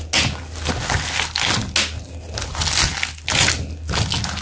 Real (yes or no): yes